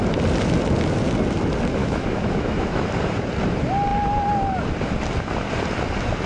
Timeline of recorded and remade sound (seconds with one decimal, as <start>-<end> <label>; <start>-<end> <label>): 0.0-1.8 recorded; 1.8-2.9 remade; 2.9-6.3 recorded